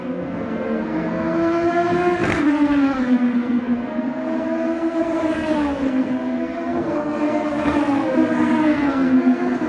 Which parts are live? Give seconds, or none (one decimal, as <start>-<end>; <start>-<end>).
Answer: none